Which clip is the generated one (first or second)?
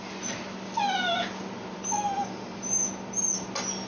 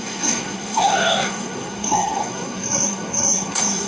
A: second